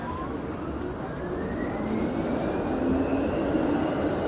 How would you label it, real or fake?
real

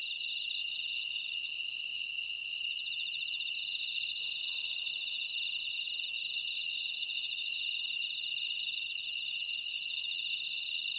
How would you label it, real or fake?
real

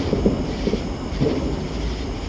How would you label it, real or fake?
real